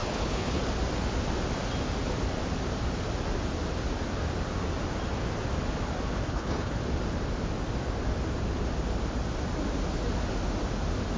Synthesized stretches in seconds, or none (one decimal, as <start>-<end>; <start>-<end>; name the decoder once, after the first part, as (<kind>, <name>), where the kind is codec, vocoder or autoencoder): 0.0-0.6 (codec, HILCodec); 6.3-6.8